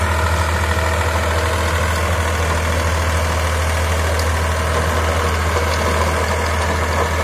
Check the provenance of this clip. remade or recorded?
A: recorded